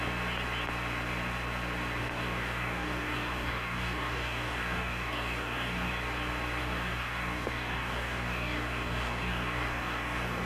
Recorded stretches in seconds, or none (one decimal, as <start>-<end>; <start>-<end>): 0.0-2.0; 5.9-6.6